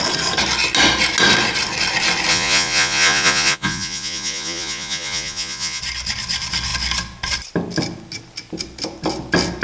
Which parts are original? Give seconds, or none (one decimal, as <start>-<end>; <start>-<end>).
0.0-2.3; 5.8-9.6